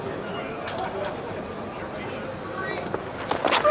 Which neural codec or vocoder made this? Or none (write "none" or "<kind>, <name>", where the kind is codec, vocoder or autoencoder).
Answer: none